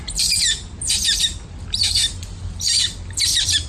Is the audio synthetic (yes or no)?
yes